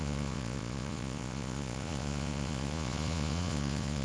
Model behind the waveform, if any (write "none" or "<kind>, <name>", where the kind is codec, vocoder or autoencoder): vocoder, Vocos